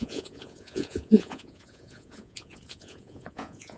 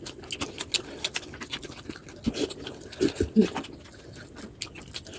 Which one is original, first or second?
second